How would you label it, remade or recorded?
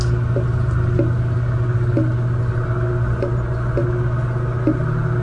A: recorded